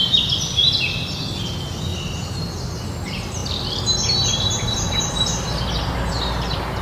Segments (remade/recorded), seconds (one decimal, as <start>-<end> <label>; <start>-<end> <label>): 0.0-1.9 recorded; 1.9-2.8 remade; 2.8-6.8 recorded